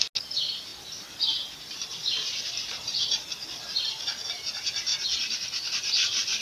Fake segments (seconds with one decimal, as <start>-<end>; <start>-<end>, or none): none